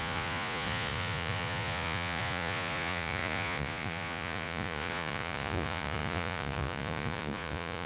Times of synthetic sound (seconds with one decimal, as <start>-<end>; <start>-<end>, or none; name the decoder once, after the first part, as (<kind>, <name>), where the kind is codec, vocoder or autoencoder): 0.0-7.9 (vocoder, Vocos)